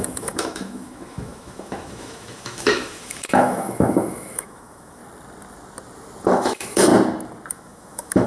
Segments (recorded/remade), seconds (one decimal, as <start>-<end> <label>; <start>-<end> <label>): 0.0-5.0 remade; 5.0-6.3 recorded; 6.3-6.9 remade; 6.9-7.5 recorded; 7.5-8.3 remade